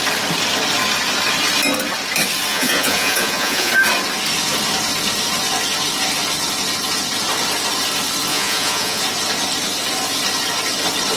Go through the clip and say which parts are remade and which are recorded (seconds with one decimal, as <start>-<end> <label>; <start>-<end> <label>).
0.0-2.5 recorded; 2.5-3.7 remade; 3.7-8.3 recorded; 8.3-9.0 remade; 9.0-11.2 recorded